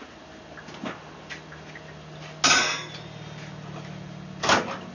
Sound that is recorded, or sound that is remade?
recorded